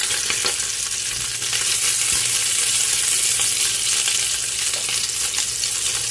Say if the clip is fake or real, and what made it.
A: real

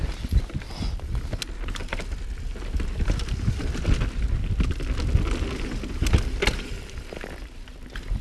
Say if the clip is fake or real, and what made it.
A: real